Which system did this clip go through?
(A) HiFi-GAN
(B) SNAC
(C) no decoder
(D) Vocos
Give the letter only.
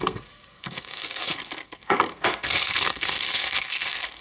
B